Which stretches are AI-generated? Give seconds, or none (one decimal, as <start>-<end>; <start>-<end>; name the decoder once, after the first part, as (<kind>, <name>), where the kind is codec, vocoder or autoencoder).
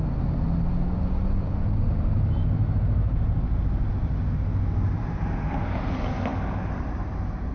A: none